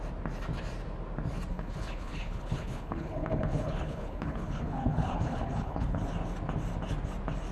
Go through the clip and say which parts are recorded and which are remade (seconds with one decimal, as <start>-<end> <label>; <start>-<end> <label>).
0.0-1.5 recorded; 1.5-6.0 remade; 6.0-7.5 recorded

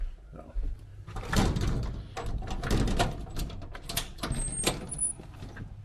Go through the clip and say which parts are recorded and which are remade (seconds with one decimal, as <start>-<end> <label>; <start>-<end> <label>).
0.0-0.9 recorded; 0.9-1.7 remade; 1.7-5.8 recorded

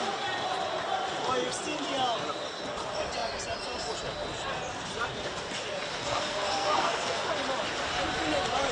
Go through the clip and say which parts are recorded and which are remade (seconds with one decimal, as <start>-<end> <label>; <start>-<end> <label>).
0.0-6.1 recorded; 6.1-7.3 remade; 7.3-8.7 recorded

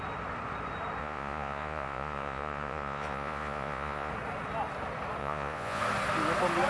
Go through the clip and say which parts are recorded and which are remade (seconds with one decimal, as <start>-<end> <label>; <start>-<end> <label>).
0.0-1.0 recorded; 1.0-4.1 remade; 4.1-5.2 recorded; 5.2-5.8 remade; 5.8-6.7 recorded

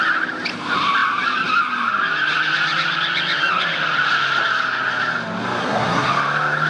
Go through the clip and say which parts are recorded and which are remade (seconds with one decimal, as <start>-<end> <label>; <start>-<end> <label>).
0.0-5.6 recorded; 5.6-6.1 remade; 6.1-6.7 recorded

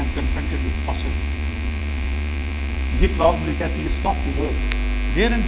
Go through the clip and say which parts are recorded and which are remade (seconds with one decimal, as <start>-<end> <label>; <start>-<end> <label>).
0.0-4.6 remade; 4.6-5.5 recorded

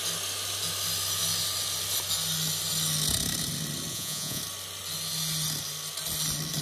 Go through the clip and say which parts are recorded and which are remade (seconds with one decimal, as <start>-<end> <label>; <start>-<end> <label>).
0.0-3.9 recorded; 3.9-4.4 remade; 4.4-6.6 recorded